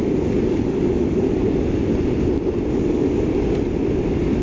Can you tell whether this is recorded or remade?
recorded